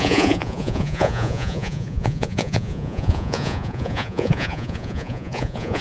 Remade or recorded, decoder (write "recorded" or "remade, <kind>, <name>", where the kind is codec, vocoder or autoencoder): remade, vocoder, Vocos